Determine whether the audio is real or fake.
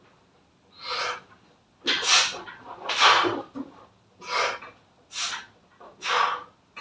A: real